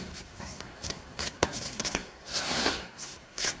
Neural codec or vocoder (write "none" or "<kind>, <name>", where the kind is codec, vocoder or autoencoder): codec, SNAC